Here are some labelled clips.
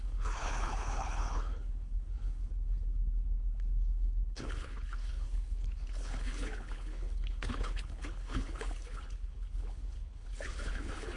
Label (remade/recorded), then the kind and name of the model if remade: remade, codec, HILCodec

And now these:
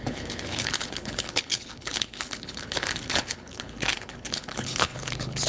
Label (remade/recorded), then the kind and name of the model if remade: remade, codec, HILCodec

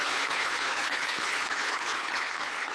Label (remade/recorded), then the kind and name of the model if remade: remade, codec, HILCodec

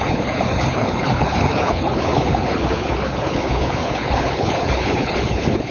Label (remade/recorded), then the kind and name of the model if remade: remade, codec, HILCodec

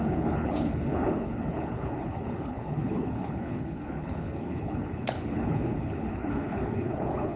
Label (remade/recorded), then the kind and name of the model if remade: remade, codec, HILCodec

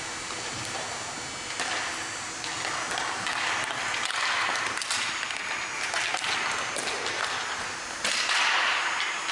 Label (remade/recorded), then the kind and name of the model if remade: recorded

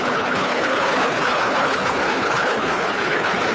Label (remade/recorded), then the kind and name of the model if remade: remade, codec, HILCodec